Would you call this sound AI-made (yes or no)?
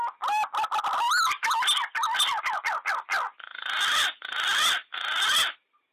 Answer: no